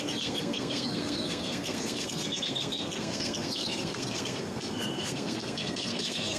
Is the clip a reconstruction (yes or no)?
yes